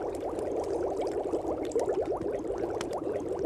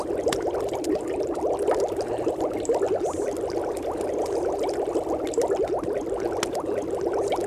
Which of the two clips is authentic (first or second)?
second